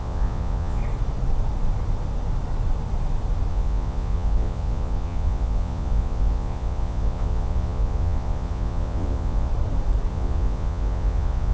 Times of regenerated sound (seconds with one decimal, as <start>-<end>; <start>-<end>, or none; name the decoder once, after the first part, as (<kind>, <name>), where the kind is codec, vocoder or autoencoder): 0.0-0.8 (vocoder, Vocos); 3.5-9.5; 10.1-11.5